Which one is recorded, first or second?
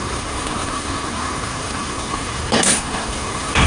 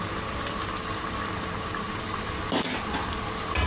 second